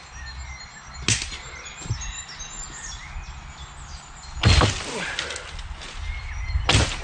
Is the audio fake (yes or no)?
no